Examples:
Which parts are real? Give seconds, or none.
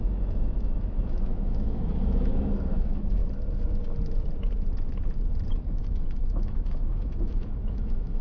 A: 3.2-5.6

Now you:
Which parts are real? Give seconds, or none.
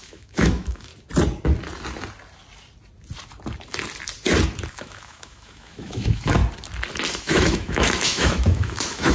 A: 0.9-4.7; 6.4-7.2